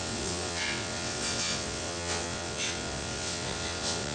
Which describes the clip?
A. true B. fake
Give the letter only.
B